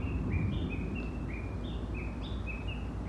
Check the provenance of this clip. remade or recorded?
recorded